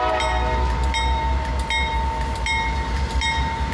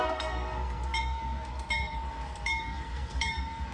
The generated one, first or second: second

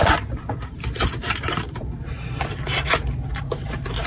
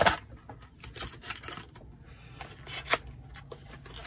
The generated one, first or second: first